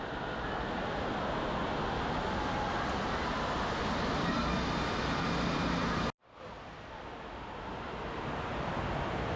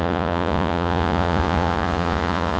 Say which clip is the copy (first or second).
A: second